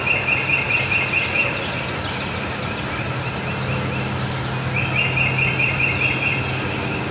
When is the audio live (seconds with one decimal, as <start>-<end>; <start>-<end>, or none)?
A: 0.0-7.1